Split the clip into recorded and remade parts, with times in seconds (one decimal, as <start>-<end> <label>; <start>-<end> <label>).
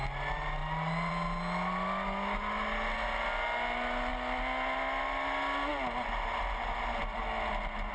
0.0-7.9 recorded